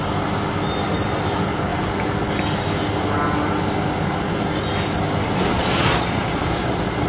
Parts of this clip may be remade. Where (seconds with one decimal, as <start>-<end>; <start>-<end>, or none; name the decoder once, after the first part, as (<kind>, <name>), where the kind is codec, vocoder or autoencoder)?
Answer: 5.5-7.1 (vocoder, Vocos)